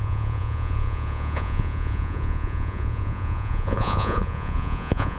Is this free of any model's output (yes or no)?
no